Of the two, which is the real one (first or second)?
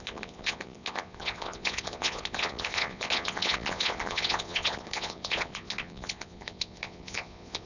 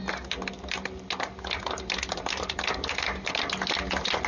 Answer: second